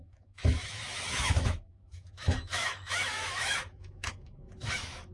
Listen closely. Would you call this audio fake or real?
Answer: fake